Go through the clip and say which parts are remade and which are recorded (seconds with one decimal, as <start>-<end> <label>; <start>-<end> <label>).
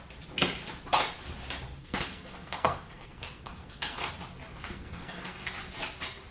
0.0-1.8 recorded; 1.8-4.1 remade; 4.1-4.5 recorded; 4.5-5.5 remade; 5.5-6.3 recorded